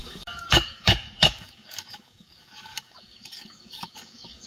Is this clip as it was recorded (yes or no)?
no